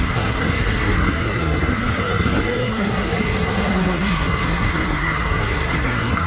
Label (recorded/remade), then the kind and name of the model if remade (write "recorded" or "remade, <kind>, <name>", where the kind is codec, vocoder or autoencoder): remade, codec, SNAC